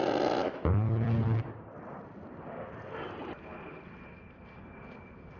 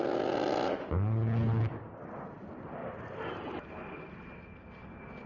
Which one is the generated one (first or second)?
first